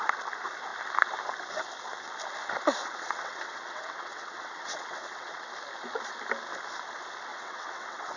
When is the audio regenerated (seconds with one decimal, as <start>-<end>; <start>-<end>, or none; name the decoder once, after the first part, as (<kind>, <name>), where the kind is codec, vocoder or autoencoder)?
2.8-5.5 (vocoder, WaveNeXt); 7.3-8.2